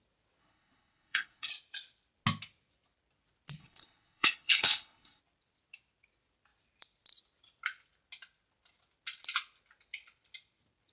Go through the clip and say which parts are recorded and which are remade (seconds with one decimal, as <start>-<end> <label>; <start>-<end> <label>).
0.0-0.4 recorded; 0.4-1.5 remade; 1.5-3.6 recorded; 3.6-5.2 remade; 5.2-10.9 recorded